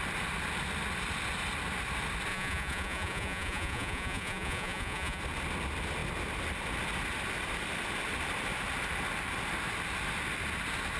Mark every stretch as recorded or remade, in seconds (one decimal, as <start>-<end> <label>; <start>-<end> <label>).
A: 0.0-2.3 recorded; 2.3-5.2 remade; 5.2-11.0 recorded